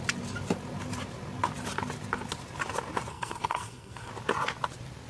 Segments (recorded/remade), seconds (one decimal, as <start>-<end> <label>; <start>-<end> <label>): 0.0-3.1 recorded; 3.1-4.1 remade; 4.1-5.1 recorded